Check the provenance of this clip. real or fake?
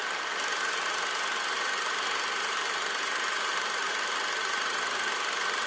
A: real